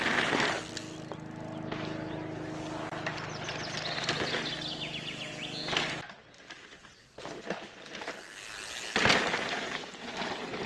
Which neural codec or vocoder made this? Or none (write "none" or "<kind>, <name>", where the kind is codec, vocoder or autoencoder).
none